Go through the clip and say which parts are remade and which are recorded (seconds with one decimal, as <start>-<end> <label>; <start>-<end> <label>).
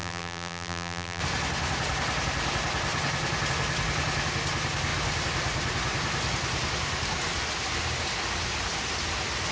0.0-1.2 remade; 1.2-9.5 recorded